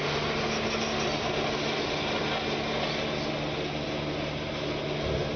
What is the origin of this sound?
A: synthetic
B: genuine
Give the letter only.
B